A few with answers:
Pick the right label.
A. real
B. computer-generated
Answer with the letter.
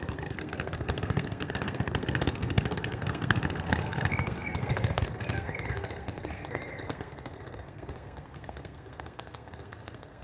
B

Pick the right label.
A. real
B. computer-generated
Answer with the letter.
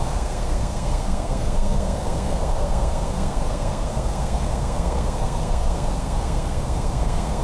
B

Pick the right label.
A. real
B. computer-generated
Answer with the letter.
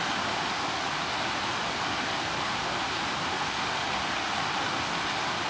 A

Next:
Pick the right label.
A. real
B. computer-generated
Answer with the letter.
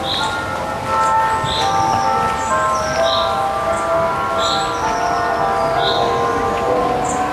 A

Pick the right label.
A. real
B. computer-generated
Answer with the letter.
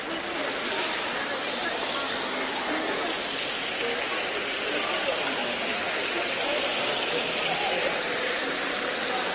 A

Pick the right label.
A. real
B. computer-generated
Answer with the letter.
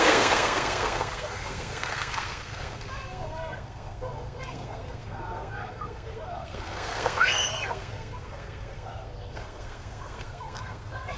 B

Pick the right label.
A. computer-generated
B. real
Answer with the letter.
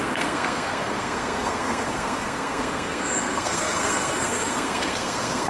A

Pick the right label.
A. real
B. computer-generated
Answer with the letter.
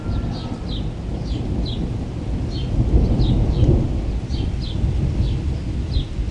A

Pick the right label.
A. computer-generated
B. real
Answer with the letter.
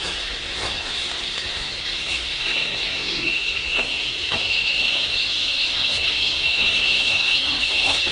A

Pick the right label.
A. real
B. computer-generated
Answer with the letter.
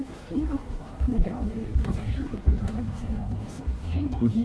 B